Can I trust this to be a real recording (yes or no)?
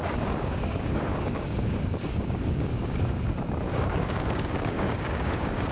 no